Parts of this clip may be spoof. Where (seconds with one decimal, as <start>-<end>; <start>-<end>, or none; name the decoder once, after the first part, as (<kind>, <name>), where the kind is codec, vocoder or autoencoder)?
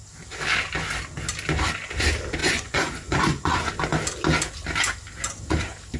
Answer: 2.4-3.6 (vocoder, Vocos)